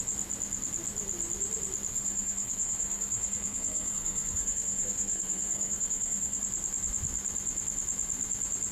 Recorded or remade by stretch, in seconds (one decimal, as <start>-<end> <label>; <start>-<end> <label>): 0.0-1.9 recorded; 1.9-6.4 remade; 6.4-8.7 recorded